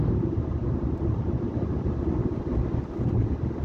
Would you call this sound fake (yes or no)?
no